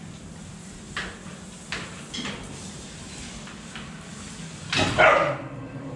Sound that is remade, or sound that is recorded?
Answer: recorded